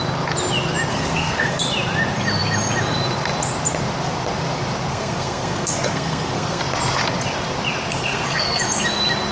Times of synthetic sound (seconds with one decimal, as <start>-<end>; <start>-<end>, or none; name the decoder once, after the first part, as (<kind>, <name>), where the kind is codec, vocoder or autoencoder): 0.9-1.6 (codec, SNAC); 4.9-6.6; 7.9-8.6